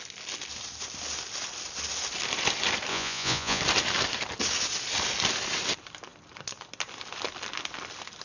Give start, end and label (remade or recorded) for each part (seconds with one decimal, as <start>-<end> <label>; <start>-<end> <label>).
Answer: 0.0-2.9 recorded; 2.9-3.6 remade; 3.6-8.2 recorded

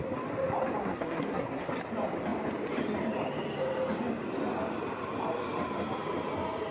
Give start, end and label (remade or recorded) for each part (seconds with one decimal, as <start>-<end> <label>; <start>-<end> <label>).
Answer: 0.0-0.8 recorded; 0.8-1.7 remade; 1.7-6.7 recorded

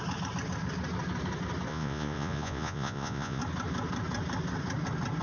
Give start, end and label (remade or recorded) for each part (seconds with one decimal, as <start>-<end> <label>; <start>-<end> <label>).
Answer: 0.0-1.7 recorded; 1.7-3.4 remade; 3.4-5.2 recorded

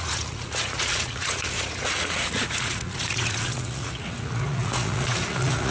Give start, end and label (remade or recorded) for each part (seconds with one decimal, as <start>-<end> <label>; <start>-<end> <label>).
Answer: 0.0-5.7 remade

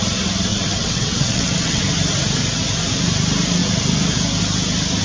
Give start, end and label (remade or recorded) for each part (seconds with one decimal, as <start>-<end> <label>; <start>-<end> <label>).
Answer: 0.0-0.5 recorded; 0.5-1.8 remade; 1.8-5.0 recorded

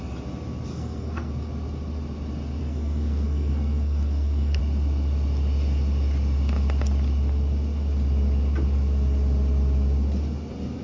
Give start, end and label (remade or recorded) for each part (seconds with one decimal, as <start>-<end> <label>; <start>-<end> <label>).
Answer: 0.0-0.7 recorded; 0.7-1.3 remade; 1.3-2.6 recorded; 2.6-4.6 remade; 4.6-10.8 recorded